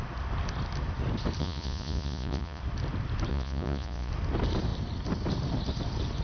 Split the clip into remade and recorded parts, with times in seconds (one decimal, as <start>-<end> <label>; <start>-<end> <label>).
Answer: 0.0-1.4 recorded; 1.4-2.6 remade; 2.6-3.3 recorded; 3.3-4.1 remade; 4.1-6.2 recorded